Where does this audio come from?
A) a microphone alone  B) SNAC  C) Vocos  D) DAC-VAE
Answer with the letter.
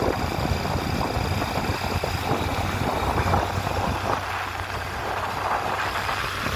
A